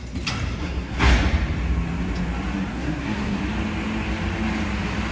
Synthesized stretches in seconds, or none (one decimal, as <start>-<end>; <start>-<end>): 0.6-1.1; 2.7-3.4

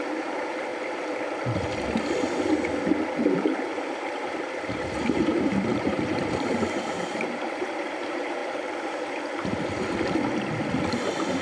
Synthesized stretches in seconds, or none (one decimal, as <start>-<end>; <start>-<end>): 0.0-0.7; 3.2-8.4